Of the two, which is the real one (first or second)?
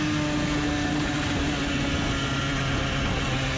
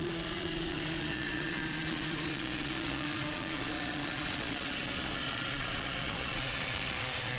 first